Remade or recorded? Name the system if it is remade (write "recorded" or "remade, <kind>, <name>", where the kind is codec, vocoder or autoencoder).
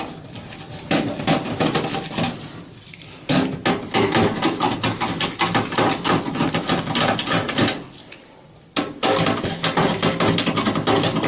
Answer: recorded